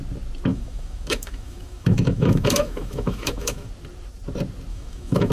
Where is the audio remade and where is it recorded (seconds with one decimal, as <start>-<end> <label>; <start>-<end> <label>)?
0.0-0.5 recorded; 0.5-3.7 remade; 3.7-4.7 recorded; 4.7-5.3 remade

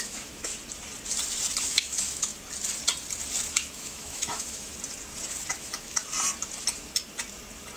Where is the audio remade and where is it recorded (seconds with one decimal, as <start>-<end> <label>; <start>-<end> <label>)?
0.0-0.5 remade; 0.5-1.6 recorded; 1.6-2.3 remade; 2.3-3.5 recorded; 3.5-4.7 remade; 4.7-5.5 recorded; 5.5-6.0 remade; 6.0-7.8 recorded

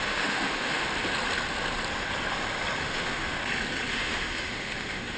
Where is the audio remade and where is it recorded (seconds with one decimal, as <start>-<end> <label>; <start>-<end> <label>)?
0.0-0.8 remade; 0.8-2.8 recorded; 2.8-3.4 remade; 3.4-3.9 recorded; 3.9-5.2 remade

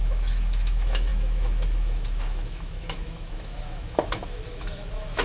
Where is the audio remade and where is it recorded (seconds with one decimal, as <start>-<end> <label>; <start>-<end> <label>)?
0.0-5.2 remade

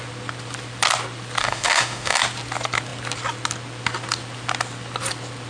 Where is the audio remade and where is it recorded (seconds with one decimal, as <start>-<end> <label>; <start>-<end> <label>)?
0.0-1.4 recorded; 1.4-2.2 remade; 2.2-5.5 recorded

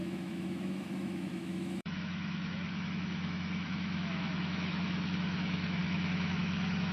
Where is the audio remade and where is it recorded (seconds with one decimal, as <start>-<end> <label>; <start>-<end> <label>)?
0.0-6.9 remade

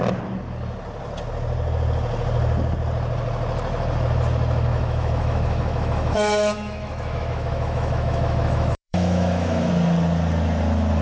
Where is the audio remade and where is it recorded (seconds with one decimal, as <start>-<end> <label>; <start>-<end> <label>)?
0.0-4.7 recorded; 4.7-9.7 remade; 9.7-11.0 recorded

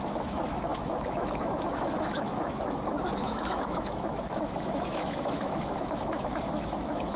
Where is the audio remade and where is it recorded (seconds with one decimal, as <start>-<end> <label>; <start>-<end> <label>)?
0.0-7.2 remade